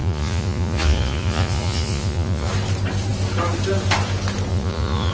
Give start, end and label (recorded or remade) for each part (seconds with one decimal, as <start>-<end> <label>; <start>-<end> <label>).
0.0-2.5 remade; 2.5-4.5 recorded; 4.5-5.1 remade